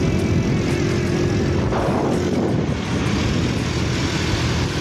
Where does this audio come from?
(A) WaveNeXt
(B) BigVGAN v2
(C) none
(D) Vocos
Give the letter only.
C